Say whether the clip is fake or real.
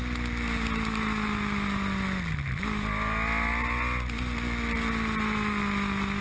real